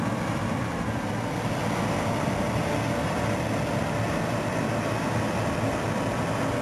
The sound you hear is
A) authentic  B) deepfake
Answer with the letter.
A